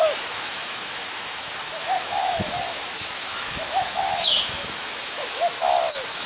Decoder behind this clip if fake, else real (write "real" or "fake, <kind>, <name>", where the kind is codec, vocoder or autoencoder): fake, autoencoder, DAC-VAE